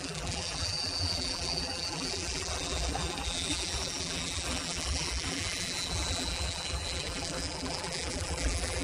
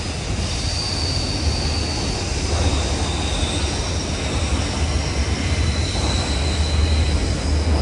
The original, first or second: second